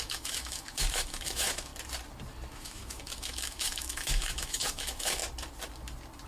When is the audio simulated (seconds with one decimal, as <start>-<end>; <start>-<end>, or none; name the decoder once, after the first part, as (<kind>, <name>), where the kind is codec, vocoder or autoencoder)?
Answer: 0.0-1.7 (autoencoder, DAC-VAE); 2.5-5.2